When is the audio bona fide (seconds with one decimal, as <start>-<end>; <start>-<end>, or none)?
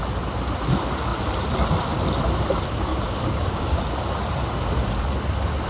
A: 0.0-2.9; 3.8-5.7